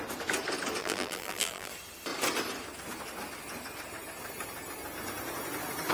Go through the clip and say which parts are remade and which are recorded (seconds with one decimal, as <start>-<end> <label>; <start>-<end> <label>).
0.0-0.8 recorded; 0.8-1.7 remade; 1.7-5.9 recorded